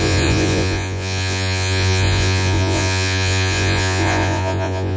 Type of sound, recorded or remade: remade